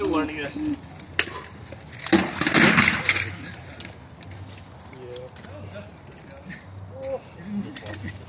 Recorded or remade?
recorded